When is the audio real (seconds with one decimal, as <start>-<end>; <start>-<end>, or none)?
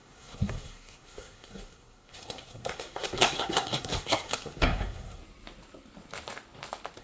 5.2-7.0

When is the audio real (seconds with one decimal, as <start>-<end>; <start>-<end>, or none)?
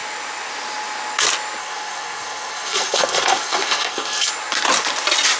0.0-1.6; 4.3-5.4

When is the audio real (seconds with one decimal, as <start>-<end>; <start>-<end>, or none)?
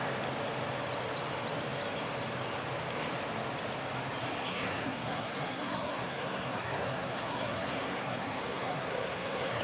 0.0-4.4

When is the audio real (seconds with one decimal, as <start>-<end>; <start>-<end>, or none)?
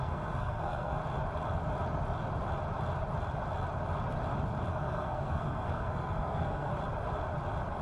1.0-4.7; 6.7-7.8